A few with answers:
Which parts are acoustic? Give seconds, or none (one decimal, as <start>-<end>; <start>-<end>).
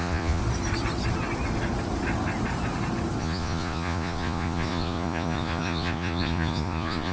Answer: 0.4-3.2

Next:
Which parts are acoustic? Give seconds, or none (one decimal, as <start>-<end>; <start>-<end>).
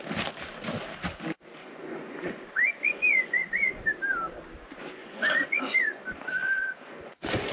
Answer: 0.0-1.6; 3.9-5.0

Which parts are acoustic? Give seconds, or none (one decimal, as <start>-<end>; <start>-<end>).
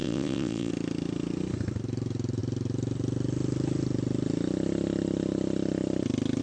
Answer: 0.7-6.4